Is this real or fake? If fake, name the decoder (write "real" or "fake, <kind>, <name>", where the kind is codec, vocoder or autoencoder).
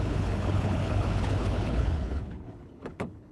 fake, codec, HILCodec